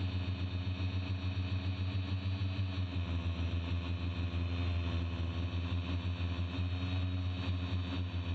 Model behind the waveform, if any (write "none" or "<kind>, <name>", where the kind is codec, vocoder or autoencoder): none